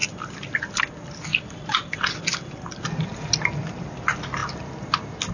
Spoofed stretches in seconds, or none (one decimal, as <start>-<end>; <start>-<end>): none